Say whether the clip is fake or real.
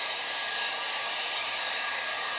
fake